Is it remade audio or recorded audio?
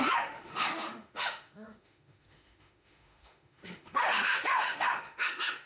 remade